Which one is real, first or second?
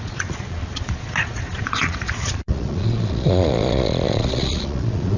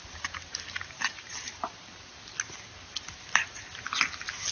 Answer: second